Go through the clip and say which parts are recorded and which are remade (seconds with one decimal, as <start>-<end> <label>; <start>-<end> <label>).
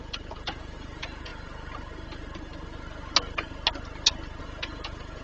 0.0-1.3 remade; 1.3-4.4 recorded; 4.4-5.2 remade